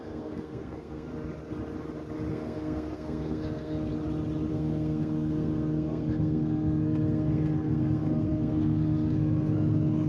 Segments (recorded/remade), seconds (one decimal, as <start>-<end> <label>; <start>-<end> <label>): 0.0-1.1 remade; 1.1-2.3 recorded; 2.3-3.9 remade; 3.9-4.5 recorded; 4.5-10.1 remade